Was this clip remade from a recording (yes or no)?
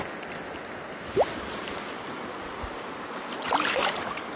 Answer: no